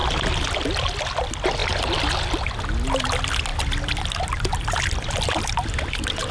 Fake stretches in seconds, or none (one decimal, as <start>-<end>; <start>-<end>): 3.5-5.7